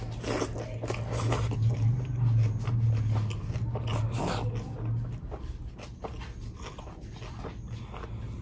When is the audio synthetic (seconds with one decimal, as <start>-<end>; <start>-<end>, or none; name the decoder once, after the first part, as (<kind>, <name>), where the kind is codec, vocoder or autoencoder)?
none